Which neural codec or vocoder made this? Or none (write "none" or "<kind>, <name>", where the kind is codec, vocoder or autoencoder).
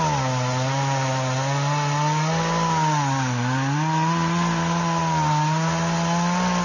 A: none